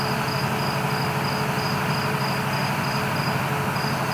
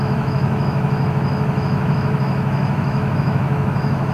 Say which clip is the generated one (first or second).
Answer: second